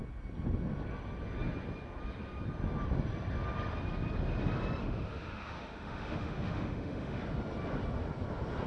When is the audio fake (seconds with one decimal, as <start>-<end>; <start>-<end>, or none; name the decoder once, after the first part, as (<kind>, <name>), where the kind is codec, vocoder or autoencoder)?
4.8-7.2 (autoencoder, DAC-VAE)